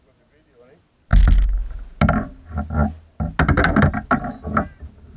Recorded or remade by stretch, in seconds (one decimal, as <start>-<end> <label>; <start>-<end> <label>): 0.0-5.2 recorded